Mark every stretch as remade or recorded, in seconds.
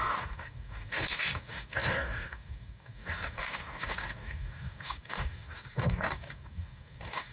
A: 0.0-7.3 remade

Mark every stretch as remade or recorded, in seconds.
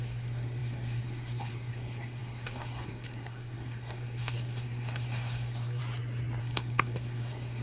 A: 0.0-5.8 remade; 5.8-6.4 recorded; 6.4-7.6 remade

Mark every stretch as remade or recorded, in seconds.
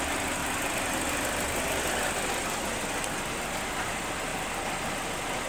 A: 0.0-5.5 recorded